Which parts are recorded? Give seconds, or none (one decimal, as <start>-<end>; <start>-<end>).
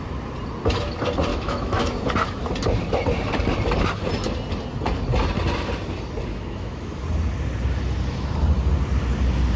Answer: 0.0-1.3; 1.9-6.3; 7.0-9.6